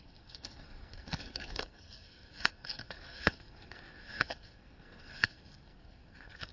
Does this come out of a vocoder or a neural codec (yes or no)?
yes